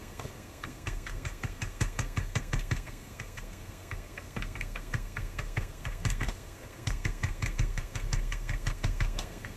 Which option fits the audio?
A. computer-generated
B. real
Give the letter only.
A